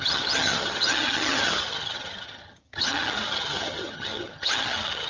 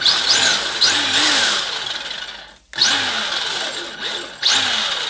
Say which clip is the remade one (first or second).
first